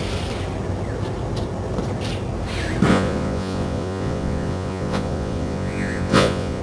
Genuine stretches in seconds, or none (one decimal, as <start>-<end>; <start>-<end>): 0.0-2.9